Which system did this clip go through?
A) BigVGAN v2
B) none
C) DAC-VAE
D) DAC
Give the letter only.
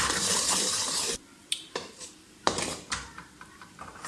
A